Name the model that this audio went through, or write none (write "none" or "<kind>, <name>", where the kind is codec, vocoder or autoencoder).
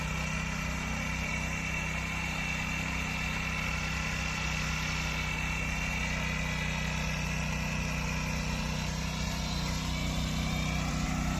none